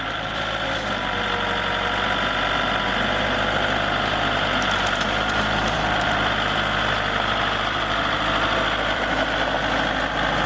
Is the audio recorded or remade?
remade